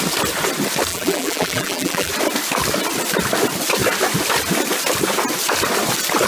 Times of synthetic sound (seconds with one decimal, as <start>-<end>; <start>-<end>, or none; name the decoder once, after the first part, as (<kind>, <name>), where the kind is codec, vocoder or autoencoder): 0.9-2.1 (vocoder, BigVGAN v2)